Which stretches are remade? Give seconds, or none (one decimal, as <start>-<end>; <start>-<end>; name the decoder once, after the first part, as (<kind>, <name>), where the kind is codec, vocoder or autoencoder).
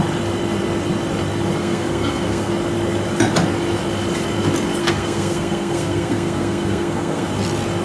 1.6-2.5 (codec, SNAC); 4.8-7.3